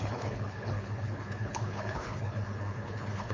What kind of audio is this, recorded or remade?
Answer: remade